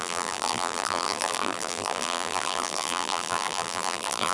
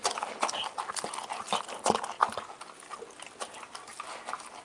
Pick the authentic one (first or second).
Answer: second